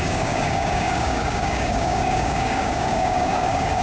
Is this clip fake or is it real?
fake